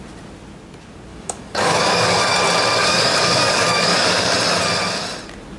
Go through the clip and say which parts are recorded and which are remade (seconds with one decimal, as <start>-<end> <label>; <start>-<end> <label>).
0.0-1.1 recorded; 1.1-2.4 remade; 2.4-2.8 recorded; 2.8-4.3 remade; 4.3-5.6 recorded